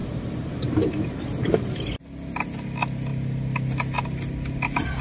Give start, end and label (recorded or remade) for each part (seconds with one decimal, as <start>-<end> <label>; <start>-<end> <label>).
0.0-5.0 recorded